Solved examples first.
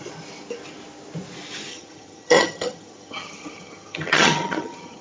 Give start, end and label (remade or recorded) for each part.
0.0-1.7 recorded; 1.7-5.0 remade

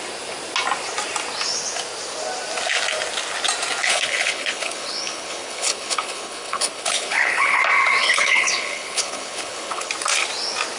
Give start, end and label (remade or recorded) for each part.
0.0-3.8 recorded; 3.8-7.6 remade; 7.6-8.0 recorded; 8.0-9.9 remade; 9.9-10.8 recorded